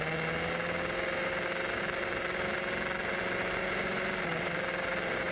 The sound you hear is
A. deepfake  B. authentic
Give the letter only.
B